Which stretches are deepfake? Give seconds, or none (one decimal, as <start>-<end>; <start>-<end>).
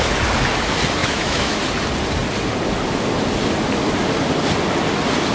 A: 1.0-1.6